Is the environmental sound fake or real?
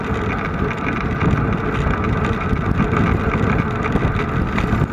real